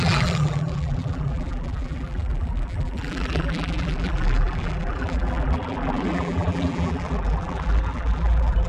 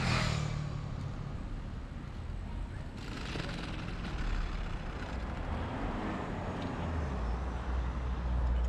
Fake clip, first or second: first